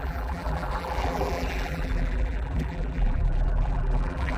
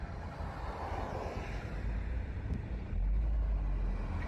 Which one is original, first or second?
second